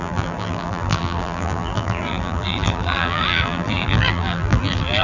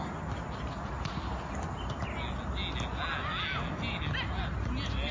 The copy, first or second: first